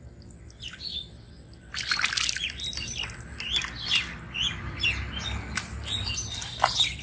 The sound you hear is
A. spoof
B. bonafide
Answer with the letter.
B